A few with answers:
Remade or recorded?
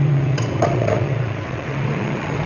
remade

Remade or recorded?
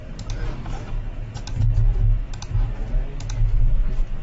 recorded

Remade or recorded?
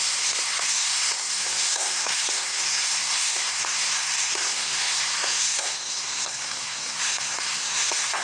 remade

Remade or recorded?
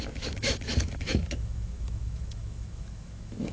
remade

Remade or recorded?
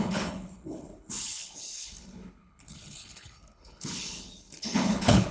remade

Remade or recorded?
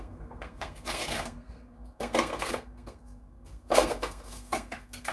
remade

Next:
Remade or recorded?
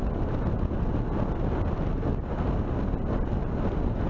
recorded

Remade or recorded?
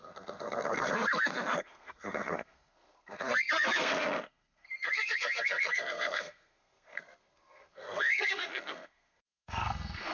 remade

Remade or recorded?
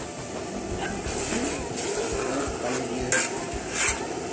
recorded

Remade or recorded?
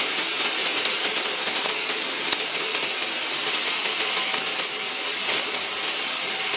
recorded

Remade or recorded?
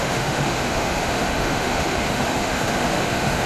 remade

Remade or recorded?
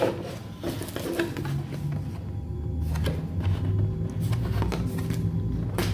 recorded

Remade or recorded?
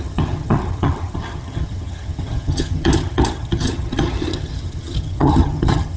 remade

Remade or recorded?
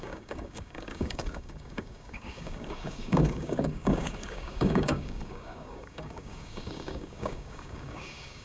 remade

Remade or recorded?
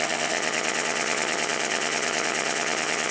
remade